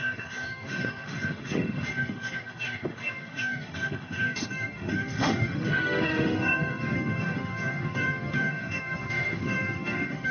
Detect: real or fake fake